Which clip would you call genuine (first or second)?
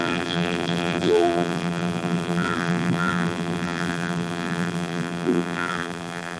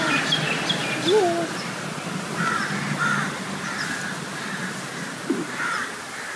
second